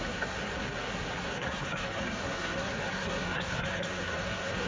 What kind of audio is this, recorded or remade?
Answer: remade